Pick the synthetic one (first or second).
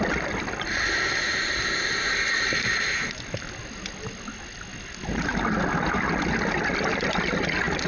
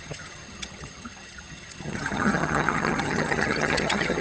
second